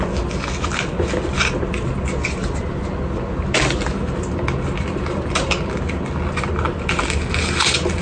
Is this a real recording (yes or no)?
yes